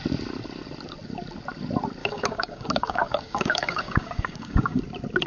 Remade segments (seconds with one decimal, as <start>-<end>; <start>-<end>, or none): 2.0-4.8